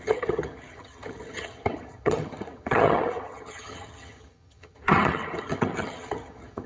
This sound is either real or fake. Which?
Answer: fake